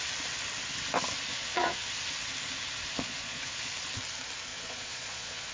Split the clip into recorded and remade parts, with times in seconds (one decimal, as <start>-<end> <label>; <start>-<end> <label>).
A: 0.0-1.3 recorded; 1.3-1.9 remade; 1.9-2.9 recorded; 2.9-3.7 remade; 3.7-4.5 recorded; 4.5-5.5 remade